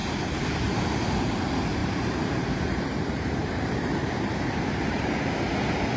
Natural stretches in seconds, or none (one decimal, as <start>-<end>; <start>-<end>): 1.1-1.8; 5.2-6.0